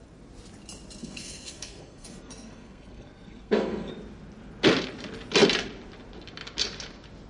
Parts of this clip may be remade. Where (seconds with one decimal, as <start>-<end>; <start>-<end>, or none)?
1.0-3.9